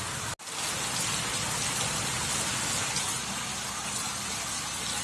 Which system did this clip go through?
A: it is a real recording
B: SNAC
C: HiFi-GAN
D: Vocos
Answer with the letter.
A